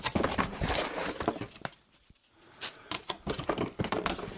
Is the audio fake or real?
fake